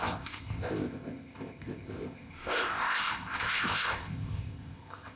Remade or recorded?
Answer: remade